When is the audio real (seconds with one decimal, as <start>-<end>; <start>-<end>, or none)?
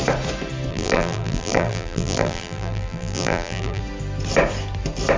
0.0-0.7; 3.8-5.2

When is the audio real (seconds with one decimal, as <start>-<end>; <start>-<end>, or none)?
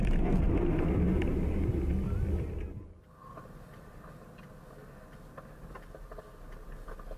0.0-1.2; 1.9-7.2